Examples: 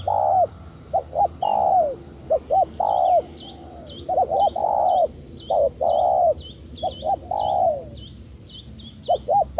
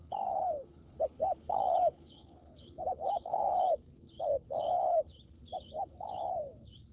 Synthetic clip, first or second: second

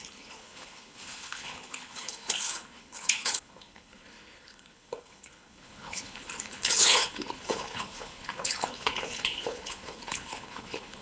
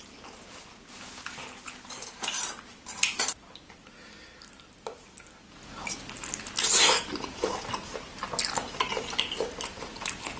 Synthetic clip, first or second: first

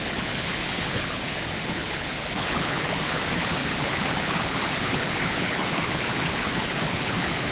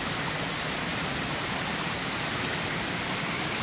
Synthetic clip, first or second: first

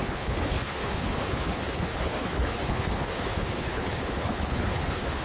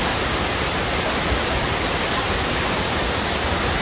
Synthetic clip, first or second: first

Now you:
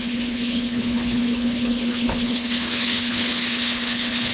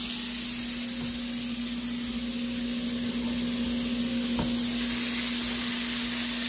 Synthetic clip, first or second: first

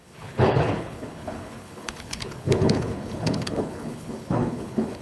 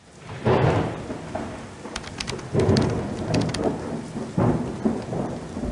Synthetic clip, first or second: first